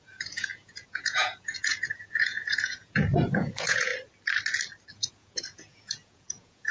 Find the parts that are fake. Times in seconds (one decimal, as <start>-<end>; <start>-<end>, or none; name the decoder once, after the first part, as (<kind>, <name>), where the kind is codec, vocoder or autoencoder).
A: 0.0-3.9 (vocoder, Vocos); 4.9-6.7